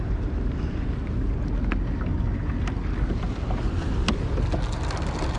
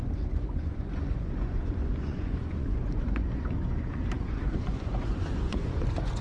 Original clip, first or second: first